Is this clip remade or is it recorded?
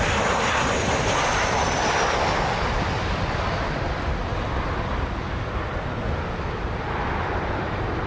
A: recorded